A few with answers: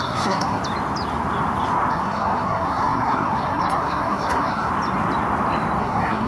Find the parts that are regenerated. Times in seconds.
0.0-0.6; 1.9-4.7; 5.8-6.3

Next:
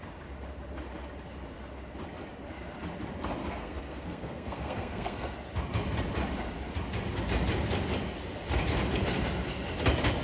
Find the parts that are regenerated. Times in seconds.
3.4-5.3

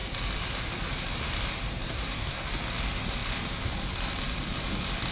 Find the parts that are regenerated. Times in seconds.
1.9-2.5

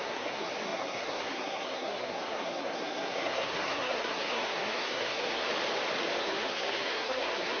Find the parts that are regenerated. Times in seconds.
0.0-5.5; 6.2-7.6

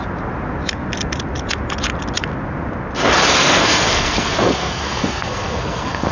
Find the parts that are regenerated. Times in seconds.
3.4-6.1

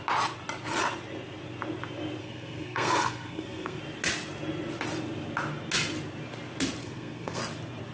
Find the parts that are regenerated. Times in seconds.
2.2-3.8; 6.8-7.4